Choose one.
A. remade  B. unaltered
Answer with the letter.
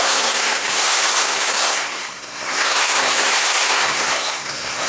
A